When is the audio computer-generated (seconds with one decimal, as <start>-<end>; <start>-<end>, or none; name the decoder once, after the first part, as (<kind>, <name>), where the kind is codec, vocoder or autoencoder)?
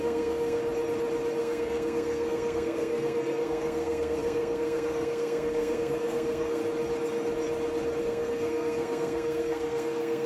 0.0-0.6 (codec, SNAC); 1.4-6.6; 8.0-10.3